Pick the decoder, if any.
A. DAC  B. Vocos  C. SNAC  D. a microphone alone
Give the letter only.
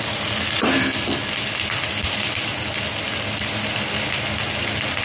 D